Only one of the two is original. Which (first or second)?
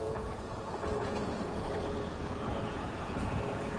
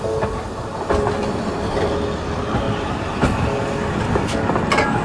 second